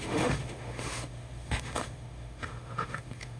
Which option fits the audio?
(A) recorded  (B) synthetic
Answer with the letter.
B